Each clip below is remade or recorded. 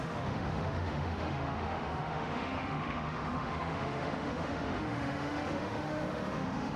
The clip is remade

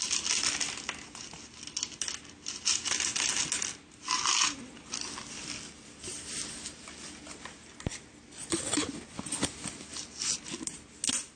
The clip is recorded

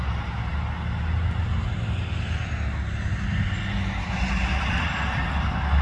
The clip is recorded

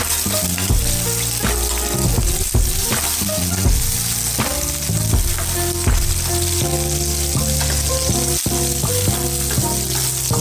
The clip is recorded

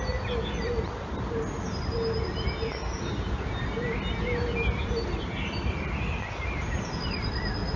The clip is recorded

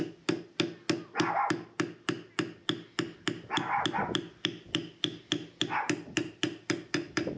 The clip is recorded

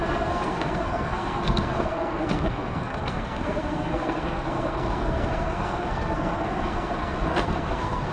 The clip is remade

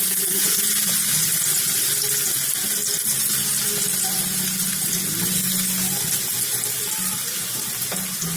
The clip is recorded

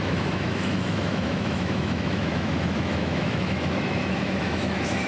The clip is remade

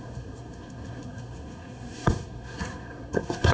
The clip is remade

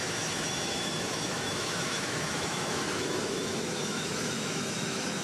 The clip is remade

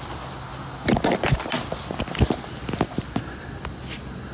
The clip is recorded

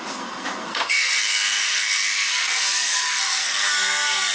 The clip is remade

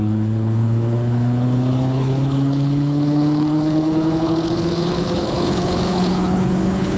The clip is remade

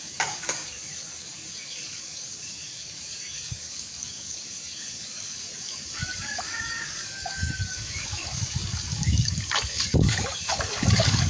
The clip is remade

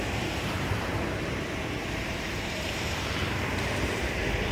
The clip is remade